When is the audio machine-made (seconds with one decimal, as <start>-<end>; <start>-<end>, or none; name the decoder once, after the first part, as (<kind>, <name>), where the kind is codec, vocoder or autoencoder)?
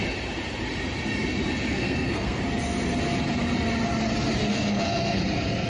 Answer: 1.7-2.4 (codec, SNAC); 4.5-5.2